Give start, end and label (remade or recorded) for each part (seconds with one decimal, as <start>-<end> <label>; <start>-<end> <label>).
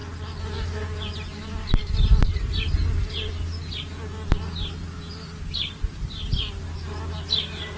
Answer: 0.0-7.8 recorded